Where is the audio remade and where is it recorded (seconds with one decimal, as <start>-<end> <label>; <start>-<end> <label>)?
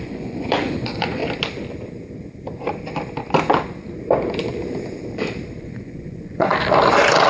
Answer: 0.0-1.2 remade; 1.2-5.6 recorded; 5.6-6.5 remade; 6.5-7.3 recorded